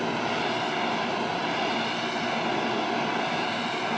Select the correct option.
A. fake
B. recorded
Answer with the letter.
B